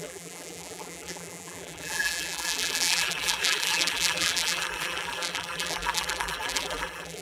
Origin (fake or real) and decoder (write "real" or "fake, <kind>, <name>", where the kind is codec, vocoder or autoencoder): fake, vocoder, BigVGAN v2